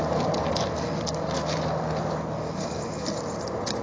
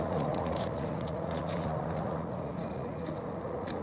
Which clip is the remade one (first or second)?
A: second